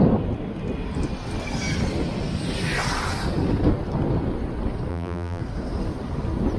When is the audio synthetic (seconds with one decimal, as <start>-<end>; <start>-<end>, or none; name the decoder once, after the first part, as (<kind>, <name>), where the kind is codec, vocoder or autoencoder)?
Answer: 4.9-5.4 (vocoder, BigVGAN v2)